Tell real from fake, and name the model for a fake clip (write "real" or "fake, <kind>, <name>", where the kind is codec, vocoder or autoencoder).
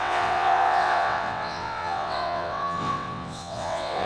fake, vocoder, WaveNeXt